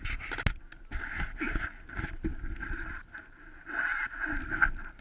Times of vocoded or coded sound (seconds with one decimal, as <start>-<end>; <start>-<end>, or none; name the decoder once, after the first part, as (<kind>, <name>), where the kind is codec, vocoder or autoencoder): none